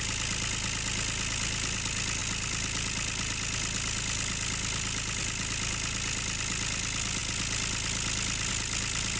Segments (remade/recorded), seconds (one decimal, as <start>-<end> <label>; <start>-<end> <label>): 0.0-9.2 recorded